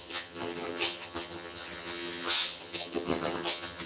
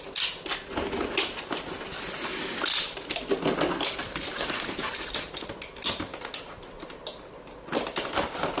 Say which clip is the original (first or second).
second